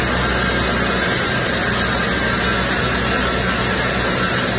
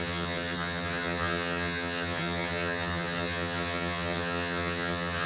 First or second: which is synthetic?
second